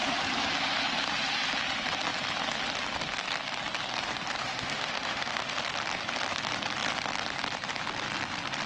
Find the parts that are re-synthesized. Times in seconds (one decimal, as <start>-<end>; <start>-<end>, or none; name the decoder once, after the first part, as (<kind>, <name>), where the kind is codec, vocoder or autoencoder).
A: 4.4-5.6 (autoencoder, DAC-VAE)